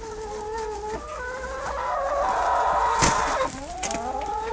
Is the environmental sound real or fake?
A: real